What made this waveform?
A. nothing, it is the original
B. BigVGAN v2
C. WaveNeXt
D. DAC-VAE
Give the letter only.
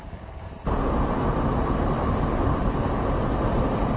B